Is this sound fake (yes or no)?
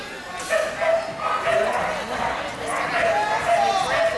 no